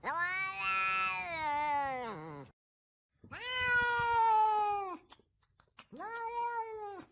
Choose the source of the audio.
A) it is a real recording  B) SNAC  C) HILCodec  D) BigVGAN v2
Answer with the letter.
A